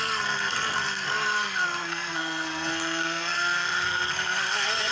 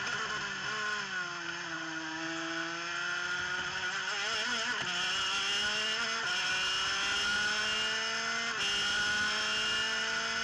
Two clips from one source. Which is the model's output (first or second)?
first